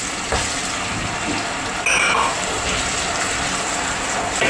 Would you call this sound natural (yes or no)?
yes